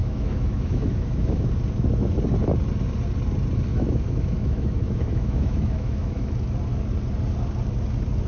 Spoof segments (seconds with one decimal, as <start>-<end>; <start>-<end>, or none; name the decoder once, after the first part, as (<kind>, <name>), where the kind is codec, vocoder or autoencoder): 0.0-1.5 (autoencoder, DAC-VAE); 3.7-6.3